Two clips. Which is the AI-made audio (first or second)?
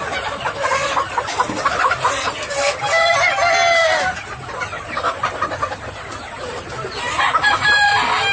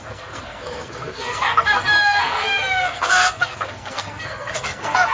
second